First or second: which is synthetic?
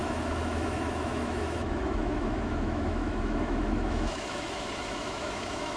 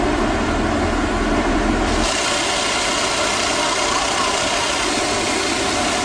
first